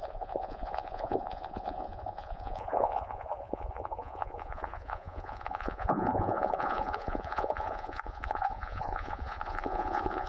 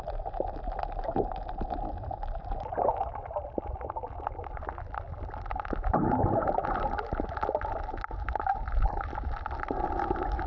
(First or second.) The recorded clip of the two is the second